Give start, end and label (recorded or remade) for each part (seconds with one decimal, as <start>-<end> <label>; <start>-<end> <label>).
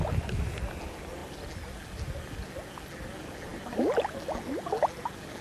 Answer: 0.0-5.4 recorded